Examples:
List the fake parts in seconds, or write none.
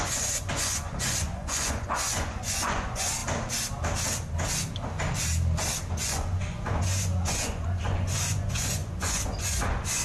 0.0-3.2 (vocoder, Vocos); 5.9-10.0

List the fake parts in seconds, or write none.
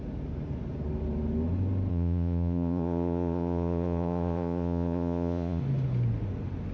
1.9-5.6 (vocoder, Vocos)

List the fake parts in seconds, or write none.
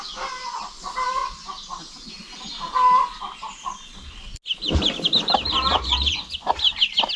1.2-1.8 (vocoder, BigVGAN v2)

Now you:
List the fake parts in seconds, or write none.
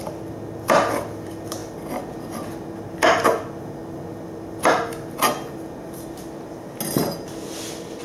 none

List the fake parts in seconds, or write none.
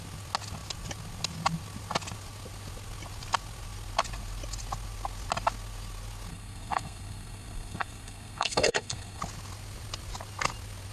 6.3-9.2 (codec, SNAC)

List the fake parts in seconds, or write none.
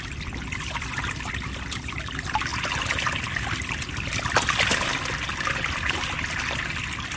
none